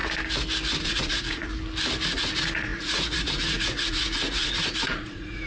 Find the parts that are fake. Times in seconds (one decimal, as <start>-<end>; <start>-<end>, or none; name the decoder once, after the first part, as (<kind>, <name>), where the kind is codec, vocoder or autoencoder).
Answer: 0.8-1.5 (vocoder, Vocos); 2.1-5.5